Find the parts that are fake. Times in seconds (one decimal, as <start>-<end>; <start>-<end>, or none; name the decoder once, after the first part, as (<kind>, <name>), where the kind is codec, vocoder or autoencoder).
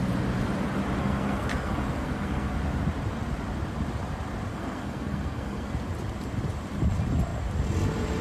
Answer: 1.0-2.6 (codec, SNAC); 4.5-5.8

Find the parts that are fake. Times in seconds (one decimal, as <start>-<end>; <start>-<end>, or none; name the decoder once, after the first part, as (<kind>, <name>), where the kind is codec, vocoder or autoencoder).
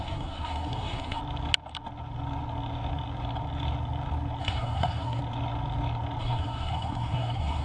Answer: 0.0-1.2 (codec, SNAC); 4.4-5.2; 6.2-7.6